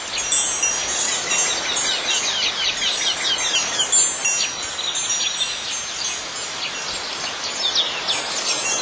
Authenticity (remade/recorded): recorded